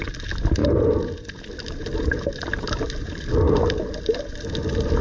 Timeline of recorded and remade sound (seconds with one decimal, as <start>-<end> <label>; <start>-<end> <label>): 0.0-5.0 recorded

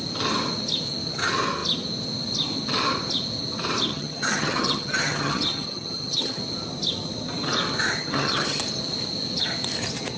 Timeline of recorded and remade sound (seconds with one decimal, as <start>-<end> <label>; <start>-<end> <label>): 0.0-3.9 recorded; 3.9-6.4 remade; 6.4-8.0 recorded; 8.0-8.6 remade; 8.6-10.2 recorded

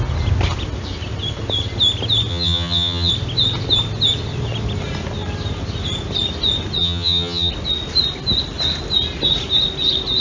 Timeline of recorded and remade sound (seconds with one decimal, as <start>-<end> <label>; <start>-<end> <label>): 0.0-2.3 recorded; 2.3-3.1 remade; 3.1-6.8 recorded; 6.8-7.5 remade; 7.5-10.2 recorded

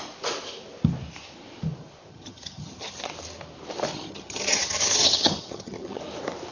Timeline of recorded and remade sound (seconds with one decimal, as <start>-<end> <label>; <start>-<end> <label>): 0.0-2.1 recorded; 2.1-3.0 remade; 3.0-3.9 recorded; 3.9-6.0 remade; 6.0-6.5 recorded